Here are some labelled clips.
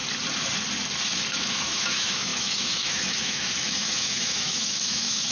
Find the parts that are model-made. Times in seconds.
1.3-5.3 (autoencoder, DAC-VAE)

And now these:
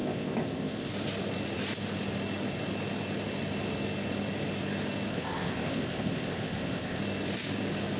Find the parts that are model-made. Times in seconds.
0.0-0.9 (codec, ZipCodec); 5.1-7.0

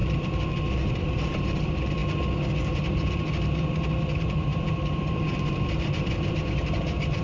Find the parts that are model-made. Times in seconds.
0.0-2.0 (vocoder, BigVGAN v2); 2.6-7.2

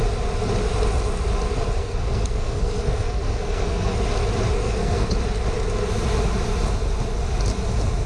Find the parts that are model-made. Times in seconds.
1.8-4.0 (codec, SNAC); 4.6-5.1

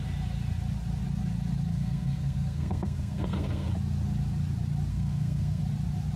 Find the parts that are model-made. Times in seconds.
1.7-3.7 (codec, SNAC); 4.9-5.6

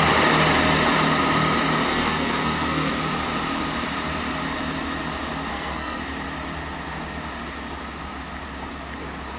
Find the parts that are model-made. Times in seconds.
1.9-2.9 (codec, SNAC); 5.5-6.0

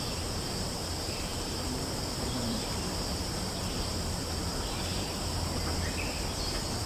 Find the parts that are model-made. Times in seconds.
1.3-3.5 (vocoder, BigVGAN v2); 4.9-5.7